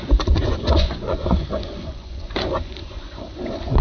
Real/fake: fake